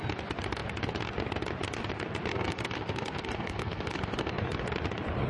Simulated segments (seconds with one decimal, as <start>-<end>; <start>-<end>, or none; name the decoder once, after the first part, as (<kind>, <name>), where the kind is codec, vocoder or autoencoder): 2.3-4.3 (codec, SNAC)